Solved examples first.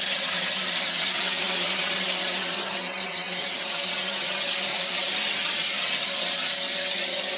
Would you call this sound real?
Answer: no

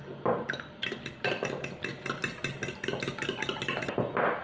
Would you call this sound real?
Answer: yes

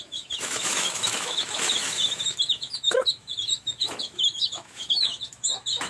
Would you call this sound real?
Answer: no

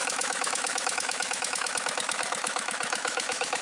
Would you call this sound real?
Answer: no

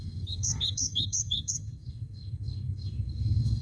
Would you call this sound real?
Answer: no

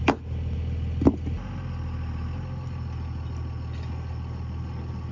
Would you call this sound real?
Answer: yes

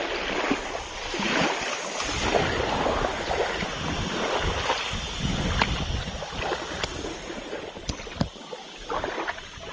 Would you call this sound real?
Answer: yes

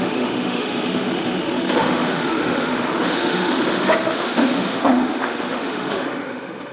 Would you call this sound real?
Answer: no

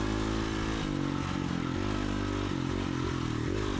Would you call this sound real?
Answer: yes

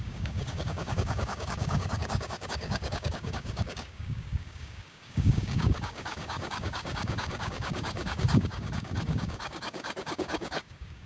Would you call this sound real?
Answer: no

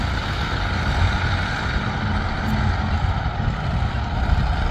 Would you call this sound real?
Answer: yes